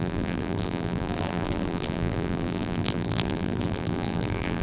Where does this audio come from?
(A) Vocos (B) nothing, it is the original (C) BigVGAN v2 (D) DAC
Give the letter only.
C